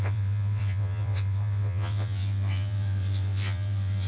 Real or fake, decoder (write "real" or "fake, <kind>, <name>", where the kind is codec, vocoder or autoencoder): fake, vocoder, WaveNeXt